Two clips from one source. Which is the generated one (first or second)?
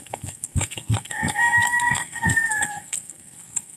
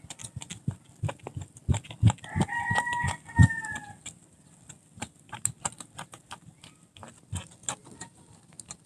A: first